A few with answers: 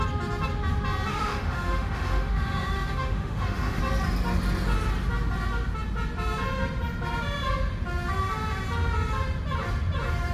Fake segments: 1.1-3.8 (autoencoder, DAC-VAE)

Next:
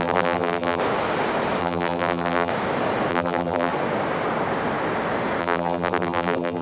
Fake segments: 0.0-0.8 (vocoder, BigVGAN v2); 1.6-2.5; 3.1-3.7; 5.4-6.6

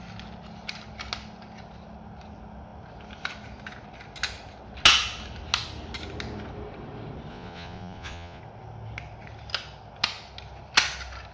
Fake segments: 7.3-8.4 (vocoder, Vocos)